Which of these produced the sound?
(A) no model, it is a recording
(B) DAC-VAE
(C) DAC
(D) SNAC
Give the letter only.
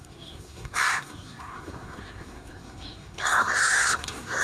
D